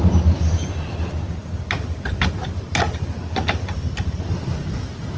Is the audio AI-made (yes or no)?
no